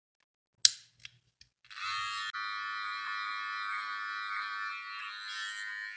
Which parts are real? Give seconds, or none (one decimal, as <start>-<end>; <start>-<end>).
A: 0.0-6.0